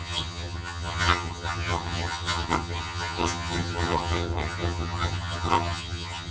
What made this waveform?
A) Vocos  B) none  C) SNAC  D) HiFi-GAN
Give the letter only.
D